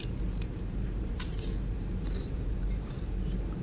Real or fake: fake